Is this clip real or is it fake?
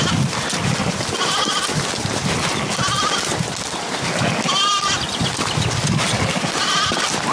real